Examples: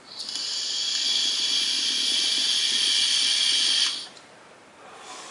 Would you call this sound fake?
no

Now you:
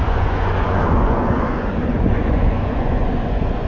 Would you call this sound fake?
yes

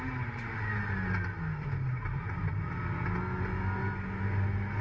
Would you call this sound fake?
no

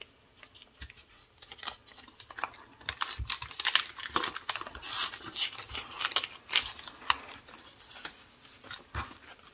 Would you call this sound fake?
no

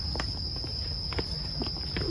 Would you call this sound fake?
no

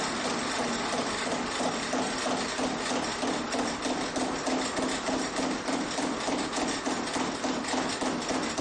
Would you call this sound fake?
no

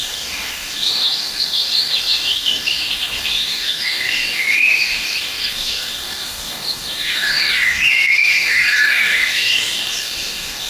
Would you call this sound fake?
yes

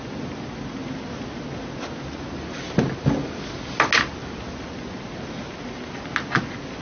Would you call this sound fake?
no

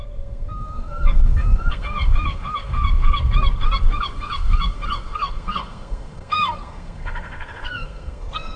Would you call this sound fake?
yes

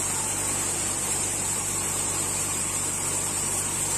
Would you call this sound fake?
yes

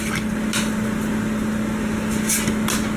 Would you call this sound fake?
no